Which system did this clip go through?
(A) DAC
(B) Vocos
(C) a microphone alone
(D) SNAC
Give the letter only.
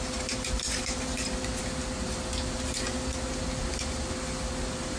C